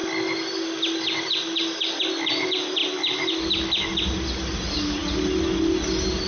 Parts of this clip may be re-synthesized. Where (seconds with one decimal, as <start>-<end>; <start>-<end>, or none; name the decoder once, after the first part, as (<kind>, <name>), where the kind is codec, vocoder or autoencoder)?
none